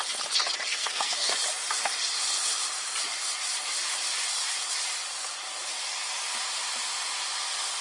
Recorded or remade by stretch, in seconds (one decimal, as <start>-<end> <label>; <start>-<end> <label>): 0.0-0.7 recorded; 0.7-1.3 remade; 1.3-7.8 recorded